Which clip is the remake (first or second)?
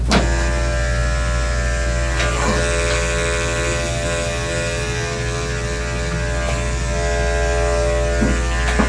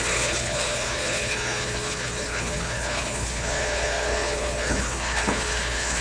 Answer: second